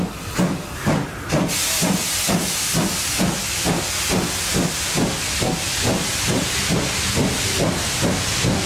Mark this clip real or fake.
real